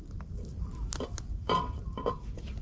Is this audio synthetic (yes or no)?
yes